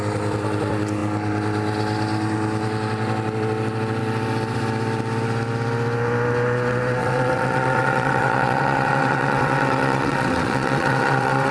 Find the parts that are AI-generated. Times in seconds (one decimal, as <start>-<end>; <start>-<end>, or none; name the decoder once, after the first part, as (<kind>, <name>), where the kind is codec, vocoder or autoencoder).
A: 7.0-11.5 (vocoder, WaveNeXt)